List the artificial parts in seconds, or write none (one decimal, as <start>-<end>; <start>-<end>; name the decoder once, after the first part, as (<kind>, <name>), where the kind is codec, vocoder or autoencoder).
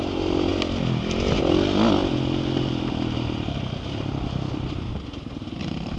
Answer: none